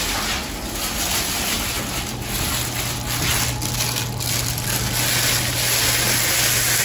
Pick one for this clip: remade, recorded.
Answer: recorded